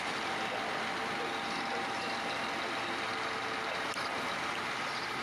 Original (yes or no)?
yes